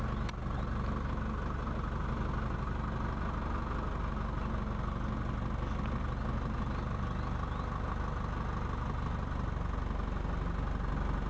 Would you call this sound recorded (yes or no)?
yes